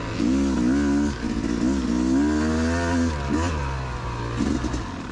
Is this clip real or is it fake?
real